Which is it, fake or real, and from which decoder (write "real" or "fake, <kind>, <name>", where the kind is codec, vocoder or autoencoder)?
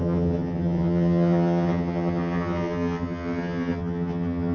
fake, vocoder, HiFi-GAN